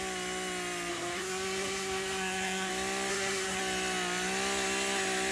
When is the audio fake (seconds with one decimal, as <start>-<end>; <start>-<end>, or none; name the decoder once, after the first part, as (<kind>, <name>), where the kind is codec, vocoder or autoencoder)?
0.9-2.7 (codec, SNAC); 3.1-3.6